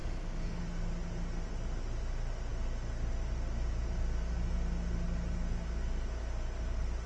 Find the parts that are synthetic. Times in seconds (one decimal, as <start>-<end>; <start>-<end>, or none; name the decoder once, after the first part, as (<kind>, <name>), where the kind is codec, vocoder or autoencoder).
0.0-0.6 (autoencoder, DAC-VAE)